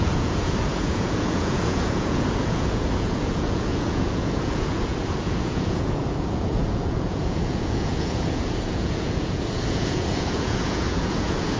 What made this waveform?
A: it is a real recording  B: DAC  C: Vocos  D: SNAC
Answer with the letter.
C